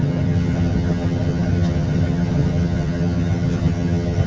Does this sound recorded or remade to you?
remade